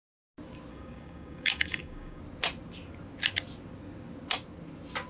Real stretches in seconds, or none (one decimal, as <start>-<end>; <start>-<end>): 0.0-0.7; 2.2-5.1